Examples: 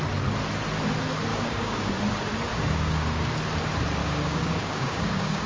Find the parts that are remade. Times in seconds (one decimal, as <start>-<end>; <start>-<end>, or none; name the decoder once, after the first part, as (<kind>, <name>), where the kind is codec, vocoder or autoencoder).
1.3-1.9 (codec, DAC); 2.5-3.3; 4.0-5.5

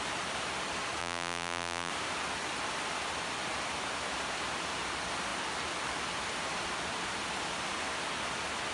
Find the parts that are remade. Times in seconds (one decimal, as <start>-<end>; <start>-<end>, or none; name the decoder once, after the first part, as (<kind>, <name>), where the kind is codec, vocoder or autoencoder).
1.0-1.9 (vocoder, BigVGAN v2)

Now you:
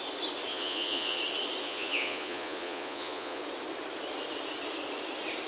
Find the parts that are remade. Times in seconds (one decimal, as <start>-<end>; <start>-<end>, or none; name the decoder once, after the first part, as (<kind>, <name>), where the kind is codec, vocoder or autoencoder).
0.5-1.2 (vocoder, Vocos); 1.6-3.4